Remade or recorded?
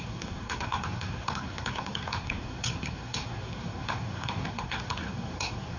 remade